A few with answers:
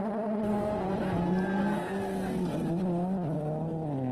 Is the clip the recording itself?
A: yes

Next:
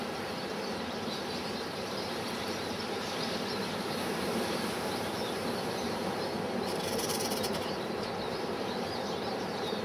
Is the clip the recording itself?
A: no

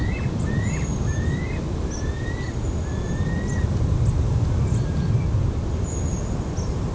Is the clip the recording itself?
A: yes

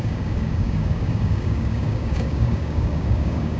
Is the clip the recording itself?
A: no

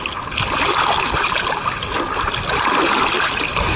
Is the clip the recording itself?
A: yes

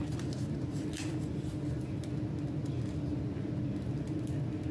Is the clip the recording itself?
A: yes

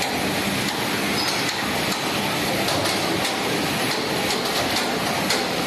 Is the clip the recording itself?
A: yes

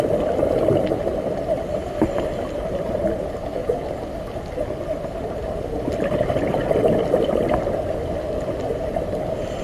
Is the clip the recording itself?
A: yes